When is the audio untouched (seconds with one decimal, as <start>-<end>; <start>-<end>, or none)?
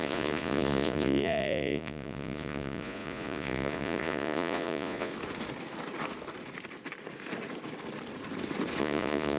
5.1-8.8